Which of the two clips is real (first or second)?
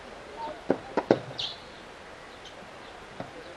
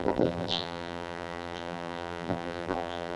first